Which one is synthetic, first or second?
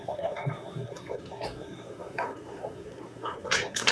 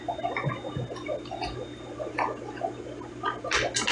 first